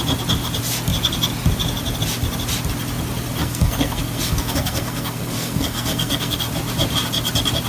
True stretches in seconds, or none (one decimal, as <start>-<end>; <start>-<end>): 0.0-3.4; 6.5-7.7